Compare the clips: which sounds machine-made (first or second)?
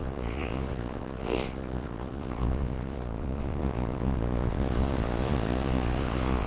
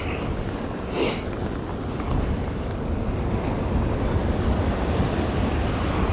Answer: first